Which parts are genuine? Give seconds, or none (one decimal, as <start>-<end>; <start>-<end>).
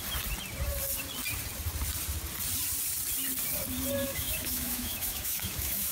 0.0-4.0